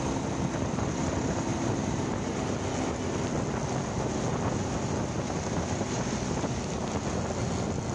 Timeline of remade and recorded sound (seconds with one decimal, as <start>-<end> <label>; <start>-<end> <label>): 0.0-1.5 recorded; 1.5-2.4 remade; 2.4-7.9 recorded